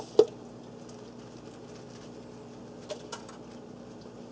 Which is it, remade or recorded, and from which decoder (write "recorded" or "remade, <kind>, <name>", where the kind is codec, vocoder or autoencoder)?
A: recorded